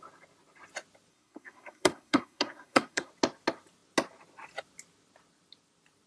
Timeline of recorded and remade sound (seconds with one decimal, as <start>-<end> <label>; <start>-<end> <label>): 0.0-1.1 recorded; 1.1-3.1 remade; 3.1-6.1 recorded